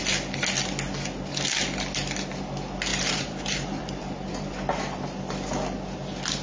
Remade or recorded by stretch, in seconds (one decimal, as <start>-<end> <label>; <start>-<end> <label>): 0.0-2.9 recorded; 2.9-4.5 remade; 4.5-6.4 recorded